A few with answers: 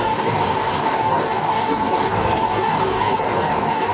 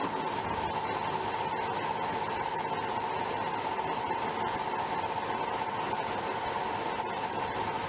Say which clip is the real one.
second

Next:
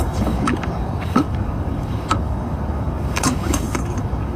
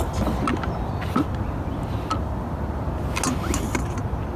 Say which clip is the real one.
second